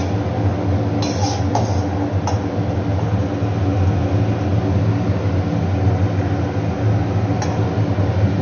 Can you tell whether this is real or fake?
real